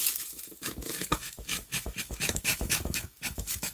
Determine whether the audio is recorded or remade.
remade